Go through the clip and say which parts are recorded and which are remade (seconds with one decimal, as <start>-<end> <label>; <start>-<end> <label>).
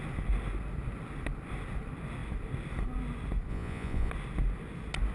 0.0-3.5 recorded; 3.5-4.1 remade; 4.1-5.1 recorded